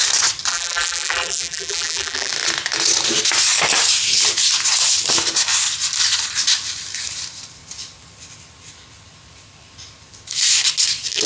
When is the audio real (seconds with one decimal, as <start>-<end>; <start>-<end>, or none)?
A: 0.0-0.5; 2.3-11.3